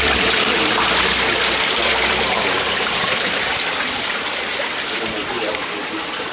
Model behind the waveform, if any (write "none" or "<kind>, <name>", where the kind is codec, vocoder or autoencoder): vocoder, BigVGAN v2